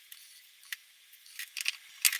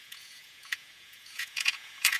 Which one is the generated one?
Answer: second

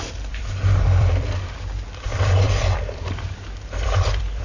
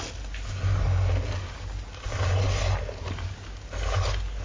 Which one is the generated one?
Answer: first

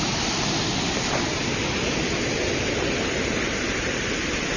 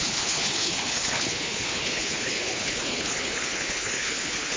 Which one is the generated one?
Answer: second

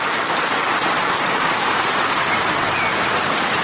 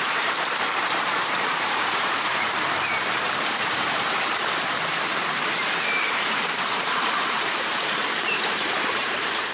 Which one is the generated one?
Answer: second